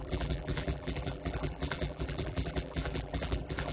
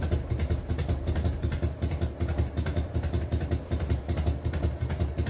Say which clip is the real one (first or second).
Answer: second